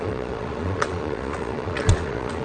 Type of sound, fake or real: fake